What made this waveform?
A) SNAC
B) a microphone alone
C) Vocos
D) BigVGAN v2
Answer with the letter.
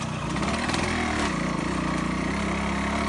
B